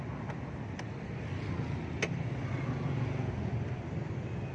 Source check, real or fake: real